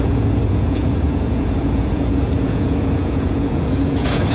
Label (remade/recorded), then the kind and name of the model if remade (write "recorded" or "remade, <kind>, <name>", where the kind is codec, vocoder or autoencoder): remade, vocoder, Vocos